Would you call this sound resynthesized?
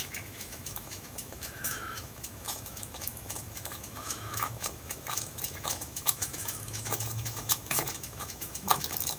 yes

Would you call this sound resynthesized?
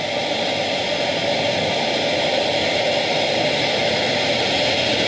no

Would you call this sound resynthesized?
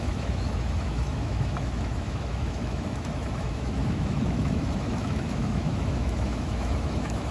yes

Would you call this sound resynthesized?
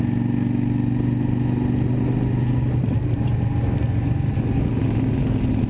no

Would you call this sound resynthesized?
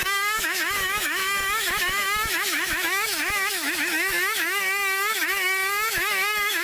yes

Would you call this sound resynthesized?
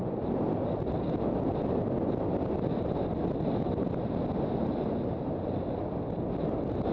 no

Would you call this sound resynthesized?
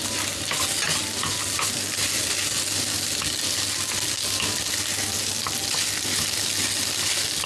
no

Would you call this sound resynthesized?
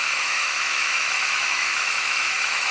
yes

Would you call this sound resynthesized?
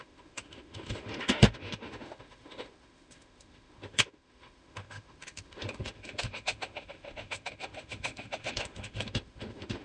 yes